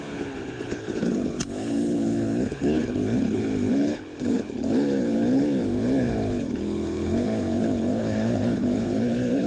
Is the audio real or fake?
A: fake